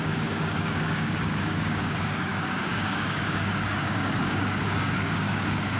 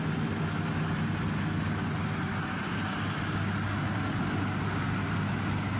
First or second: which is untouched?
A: second